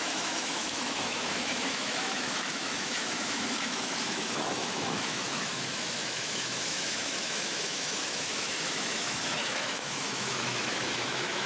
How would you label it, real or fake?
fake